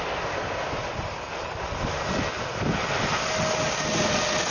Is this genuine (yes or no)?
yes